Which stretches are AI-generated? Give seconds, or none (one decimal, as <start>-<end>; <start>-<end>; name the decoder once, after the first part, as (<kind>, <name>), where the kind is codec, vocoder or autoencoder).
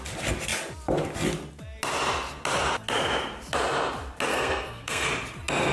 4.3-5.1 (codec, SNAC)